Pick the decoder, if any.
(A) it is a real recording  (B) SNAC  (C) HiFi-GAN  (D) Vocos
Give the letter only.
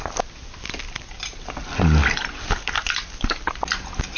A